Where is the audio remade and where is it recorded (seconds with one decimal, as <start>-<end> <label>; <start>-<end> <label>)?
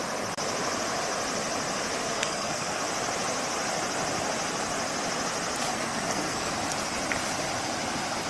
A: 0.0-2.0 recorded; 2.0-2.8 remade; 2.8-5.7 recorded; 5.7-6.5 remade; 6.5-8.3 recorded